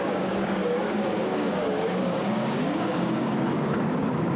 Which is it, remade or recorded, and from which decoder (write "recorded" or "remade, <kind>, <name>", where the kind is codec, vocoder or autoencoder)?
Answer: remade, codec, DAC